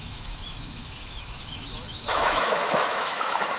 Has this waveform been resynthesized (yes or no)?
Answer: yes